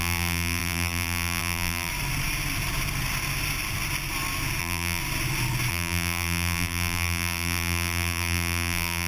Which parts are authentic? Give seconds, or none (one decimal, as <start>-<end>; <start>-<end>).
1.9-4.6; 5.0-5.7